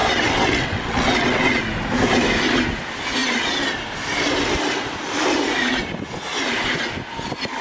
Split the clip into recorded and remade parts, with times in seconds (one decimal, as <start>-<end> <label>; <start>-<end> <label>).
0.0-1.6 remade; 1.6-7.6 recorded